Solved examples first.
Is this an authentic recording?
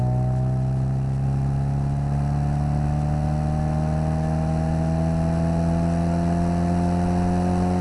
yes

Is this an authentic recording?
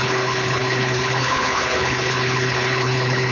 no